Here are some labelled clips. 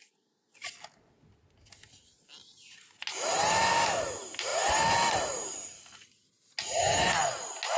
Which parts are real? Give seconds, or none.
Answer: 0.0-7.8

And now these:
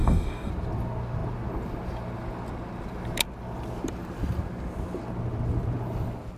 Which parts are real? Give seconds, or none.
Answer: 0.5-6.4